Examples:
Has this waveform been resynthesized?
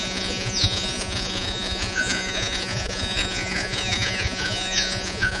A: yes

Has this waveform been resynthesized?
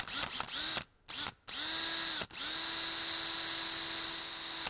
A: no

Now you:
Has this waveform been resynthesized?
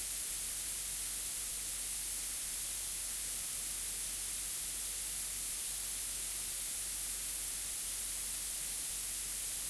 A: no